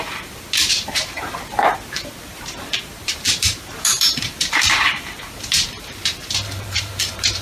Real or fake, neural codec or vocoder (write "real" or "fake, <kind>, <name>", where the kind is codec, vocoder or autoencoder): fake, vocoder, BigVGAN v2